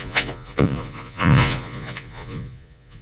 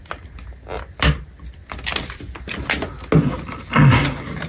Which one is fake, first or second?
first